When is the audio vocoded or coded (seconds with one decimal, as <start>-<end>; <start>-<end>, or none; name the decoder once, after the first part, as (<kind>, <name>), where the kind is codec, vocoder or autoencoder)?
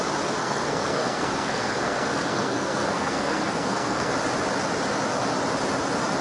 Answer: 0.4-4.1 (codec, SNAC)